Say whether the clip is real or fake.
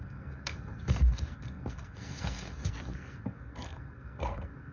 fake